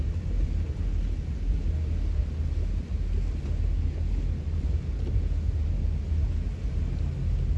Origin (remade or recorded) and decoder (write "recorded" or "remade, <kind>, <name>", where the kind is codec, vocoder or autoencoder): recorded